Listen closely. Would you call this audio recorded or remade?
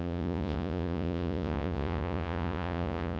remade